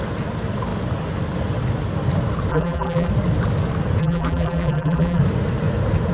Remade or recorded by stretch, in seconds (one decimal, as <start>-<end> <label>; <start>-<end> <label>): 0.0-2.5 recorded; 2.5-3.1 remade; 3.1-4.0 recorded; 4.0-5.2 remade; 5.2-6.1 recorded